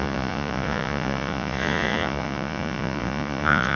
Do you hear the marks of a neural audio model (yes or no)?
yes